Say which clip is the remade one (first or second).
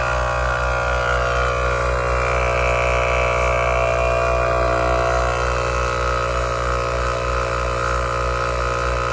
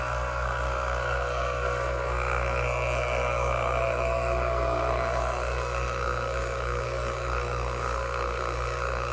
second